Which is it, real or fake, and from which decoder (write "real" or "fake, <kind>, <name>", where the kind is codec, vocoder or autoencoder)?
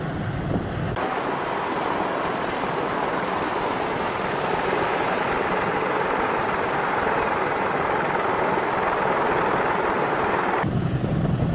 real